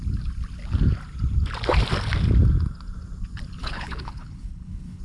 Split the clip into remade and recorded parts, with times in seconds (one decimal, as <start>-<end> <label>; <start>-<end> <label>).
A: 0.0-3.6 recorded; 3.6-5.0 remade